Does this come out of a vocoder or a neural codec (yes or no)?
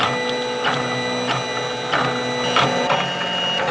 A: no